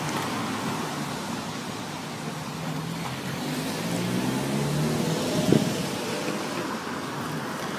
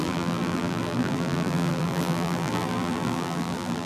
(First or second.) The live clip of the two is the first